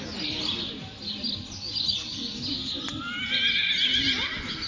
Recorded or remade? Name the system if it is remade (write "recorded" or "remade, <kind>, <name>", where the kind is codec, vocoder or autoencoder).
recorded